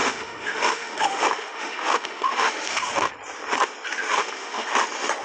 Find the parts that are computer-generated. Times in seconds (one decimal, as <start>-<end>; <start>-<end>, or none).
0.0-3.1; 4.1-4.7